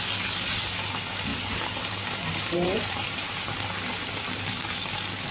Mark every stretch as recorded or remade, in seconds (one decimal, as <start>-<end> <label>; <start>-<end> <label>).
0.0-1.3 recorded; 1.3-4.5 remade; 4.5-5.3 recorded